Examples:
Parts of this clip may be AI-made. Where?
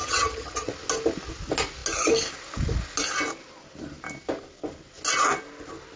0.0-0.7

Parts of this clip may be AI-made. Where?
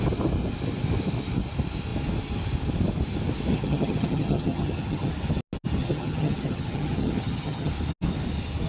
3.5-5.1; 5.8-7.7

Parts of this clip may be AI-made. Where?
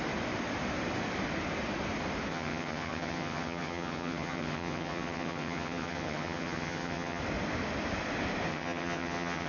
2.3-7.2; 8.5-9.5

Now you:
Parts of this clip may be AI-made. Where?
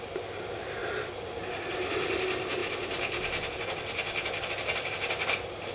none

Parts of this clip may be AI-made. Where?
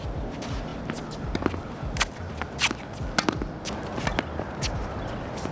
none